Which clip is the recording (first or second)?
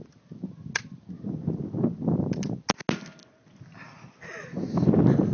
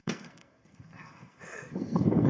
first